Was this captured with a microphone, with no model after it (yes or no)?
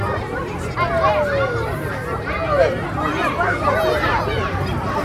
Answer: yes